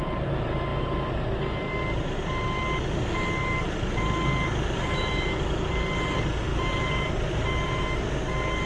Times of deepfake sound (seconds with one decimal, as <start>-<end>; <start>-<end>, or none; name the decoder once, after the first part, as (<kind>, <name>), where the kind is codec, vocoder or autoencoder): 6.5-8.1 (vocoder, BigVGAN v2)